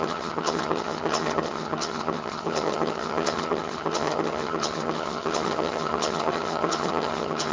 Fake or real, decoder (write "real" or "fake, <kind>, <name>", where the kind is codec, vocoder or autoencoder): fake, vocoder, HiFi-GAN